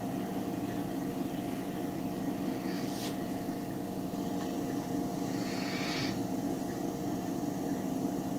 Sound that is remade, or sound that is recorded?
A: recorded